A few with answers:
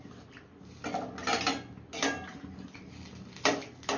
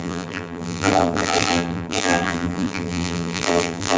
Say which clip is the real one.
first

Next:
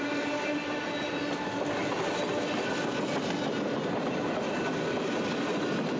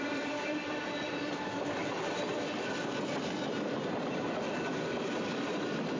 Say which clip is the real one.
first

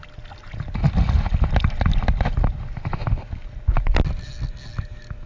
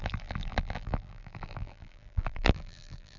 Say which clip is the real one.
first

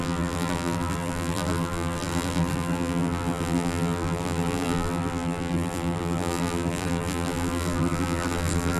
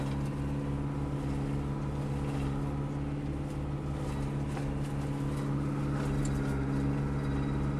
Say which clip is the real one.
second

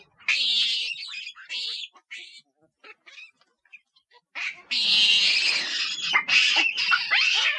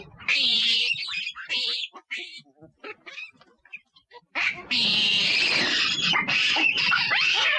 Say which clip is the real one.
first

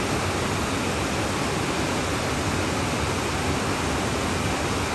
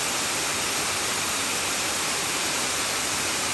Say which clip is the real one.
first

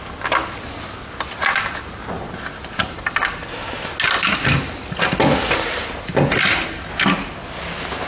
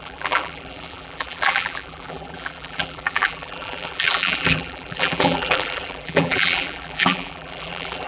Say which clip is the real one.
first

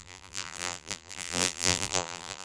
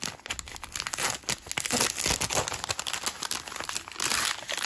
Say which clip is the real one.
second